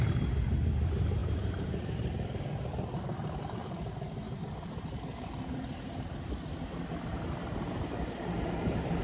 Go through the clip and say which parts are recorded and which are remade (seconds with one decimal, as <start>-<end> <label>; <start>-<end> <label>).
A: 0.0-3.6 remade; 3.6-7.7 recorded; 7.7-9.0 remade